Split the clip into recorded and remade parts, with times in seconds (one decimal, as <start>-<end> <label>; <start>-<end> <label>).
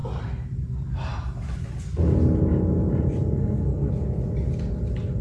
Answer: 0.0-3.4 recorded; 3.4-3.9 remade; 3.9-5.2 recorded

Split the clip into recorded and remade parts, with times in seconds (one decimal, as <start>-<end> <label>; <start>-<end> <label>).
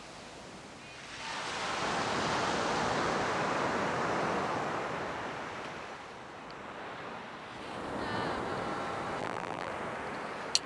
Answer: 0.0-9.2 recorded; 9.2-9.7 remade; 9.7-10.7 recorded